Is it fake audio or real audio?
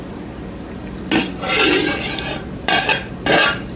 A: real